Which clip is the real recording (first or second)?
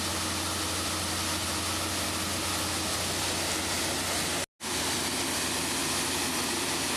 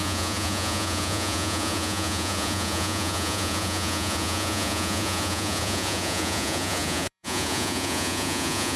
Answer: first